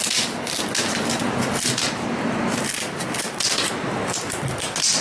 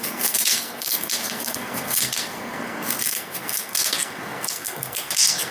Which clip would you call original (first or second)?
first